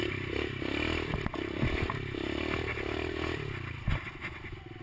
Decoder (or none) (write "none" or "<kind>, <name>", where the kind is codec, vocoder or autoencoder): none